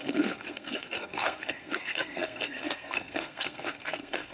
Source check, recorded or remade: remade